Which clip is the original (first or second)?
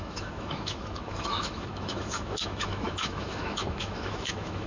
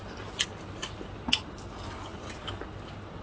second